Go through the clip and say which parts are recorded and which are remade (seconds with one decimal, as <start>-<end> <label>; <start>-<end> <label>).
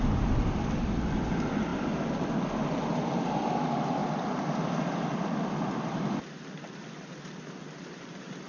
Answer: 0.0-8.5 recorded